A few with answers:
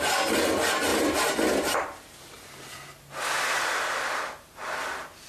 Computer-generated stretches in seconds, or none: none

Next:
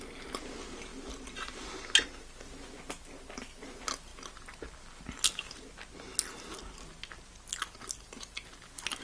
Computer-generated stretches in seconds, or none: none

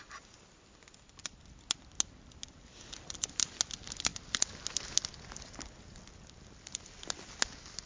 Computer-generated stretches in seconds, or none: none

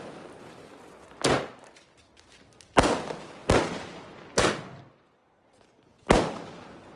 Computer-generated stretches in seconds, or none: none

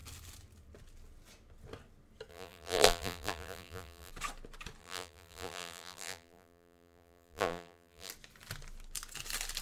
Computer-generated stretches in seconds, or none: 2.3-4.1 (vocoder, BigVGAN v2); 4.8-8.1

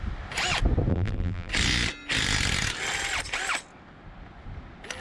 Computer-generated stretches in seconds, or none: 0.9-1.5 (vocoder, BigVGAN v2)